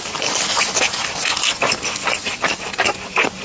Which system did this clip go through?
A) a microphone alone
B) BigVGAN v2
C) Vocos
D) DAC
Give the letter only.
A